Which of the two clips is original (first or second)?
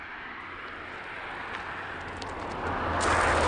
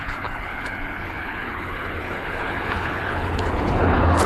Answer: first